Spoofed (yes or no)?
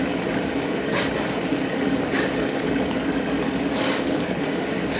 yes